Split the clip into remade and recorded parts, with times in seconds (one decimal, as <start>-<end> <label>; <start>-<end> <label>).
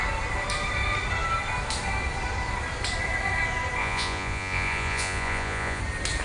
0.0-3.8 recorded; 3.8-5.8 remade; 5.8-6.2 recorded